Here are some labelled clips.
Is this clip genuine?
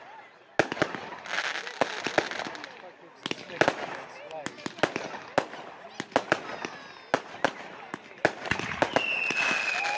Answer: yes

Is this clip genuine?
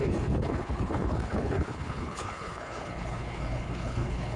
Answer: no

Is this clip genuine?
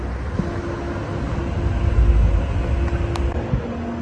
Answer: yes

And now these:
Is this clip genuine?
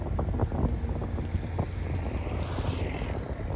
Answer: yes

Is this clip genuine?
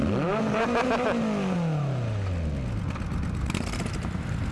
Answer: yes